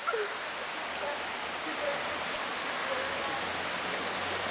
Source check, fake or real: real